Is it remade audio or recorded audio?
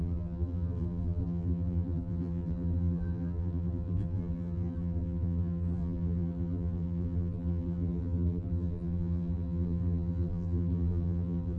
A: remade